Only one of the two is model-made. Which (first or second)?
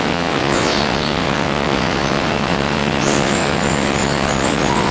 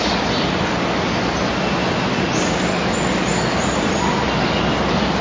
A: first